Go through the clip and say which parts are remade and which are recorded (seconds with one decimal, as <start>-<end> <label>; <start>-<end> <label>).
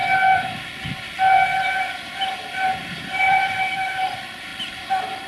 0.0-3.2 recorded; 3.2-4.5 remade; 4.5-5.3 recorded